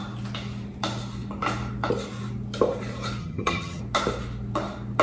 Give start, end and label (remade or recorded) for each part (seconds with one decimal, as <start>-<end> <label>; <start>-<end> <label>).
0.0-3.2 recorded; 3.2-3.8 remade; 3.8-5.0 recorded